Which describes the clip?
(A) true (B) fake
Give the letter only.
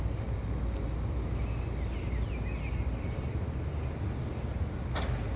A